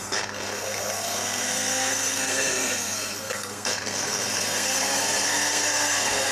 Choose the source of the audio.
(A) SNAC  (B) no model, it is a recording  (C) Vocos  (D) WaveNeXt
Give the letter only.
A